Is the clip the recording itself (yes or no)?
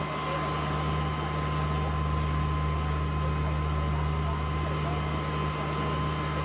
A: yes